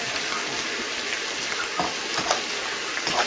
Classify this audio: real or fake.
real